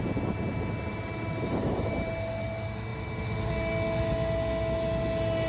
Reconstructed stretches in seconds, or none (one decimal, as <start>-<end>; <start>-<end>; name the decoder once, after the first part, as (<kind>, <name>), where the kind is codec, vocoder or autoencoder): 0.9-2.1 (vocoder, BigVGAN v2); 2.9-3.5